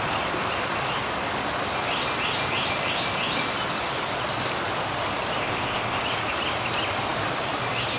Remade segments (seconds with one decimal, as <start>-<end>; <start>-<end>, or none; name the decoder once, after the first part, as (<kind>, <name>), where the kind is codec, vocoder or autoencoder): 5.4-6.0 (codec, ZipCodec)